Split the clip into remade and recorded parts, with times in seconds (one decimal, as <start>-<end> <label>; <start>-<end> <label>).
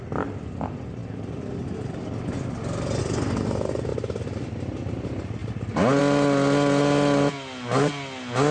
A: 0.0-8.5 recorded